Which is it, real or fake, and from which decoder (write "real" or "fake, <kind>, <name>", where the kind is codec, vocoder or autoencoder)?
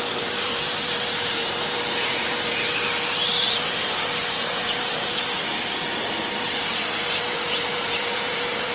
fake, vocoder, BigVGAN v2